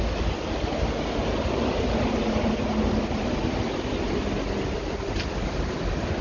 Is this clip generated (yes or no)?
no